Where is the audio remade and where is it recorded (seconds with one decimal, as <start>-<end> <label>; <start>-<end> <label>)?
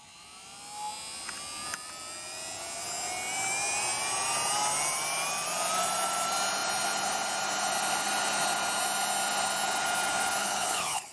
0.0-10.4 recorded; 10.4-11.1 remade